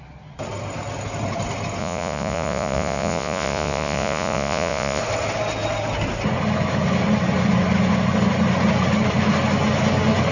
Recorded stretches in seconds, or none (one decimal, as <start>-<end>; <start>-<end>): 0.0-1.8; 5.0-10.3